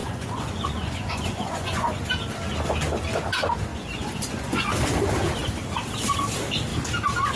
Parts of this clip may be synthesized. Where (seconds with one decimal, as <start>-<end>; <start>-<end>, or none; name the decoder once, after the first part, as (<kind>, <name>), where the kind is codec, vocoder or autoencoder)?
0.0-2.0 (vocoder, Vocos); 3.7-4.7